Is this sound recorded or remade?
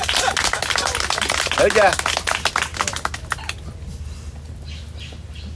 recorded